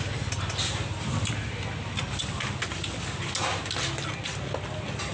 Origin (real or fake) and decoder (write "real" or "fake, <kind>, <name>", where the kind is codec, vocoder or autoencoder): real